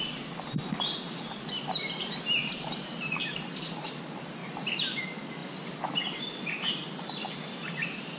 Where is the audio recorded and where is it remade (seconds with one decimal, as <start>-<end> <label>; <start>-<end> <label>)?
0.0-2.4 recorded; 2.4-3.9 remade; 3.9-4.4 recorded; 4.4-5.0 remade; 5.0-8.2 recorded